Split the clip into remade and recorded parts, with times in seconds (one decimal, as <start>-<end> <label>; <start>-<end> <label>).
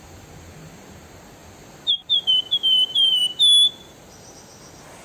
0.0-1.4 remade; 1.4-1.9 recorded; 1.9-3.2 remade; 3.2-5.0 recorded